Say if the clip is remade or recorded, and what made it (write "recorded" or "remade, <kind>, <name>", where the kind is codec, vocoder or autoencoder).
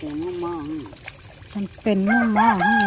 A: recorded